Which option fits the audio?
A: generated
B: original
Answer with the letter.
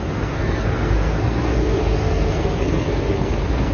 A